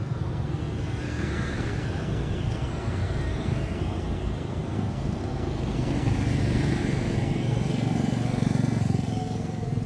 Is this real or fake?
fake